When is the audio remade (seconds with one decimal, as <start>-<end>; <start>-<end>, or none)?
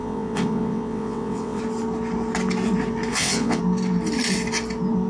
0.0-1.6; 3.1-3.6